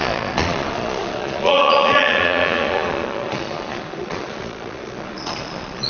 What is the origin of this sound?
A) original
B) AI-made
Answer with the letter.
B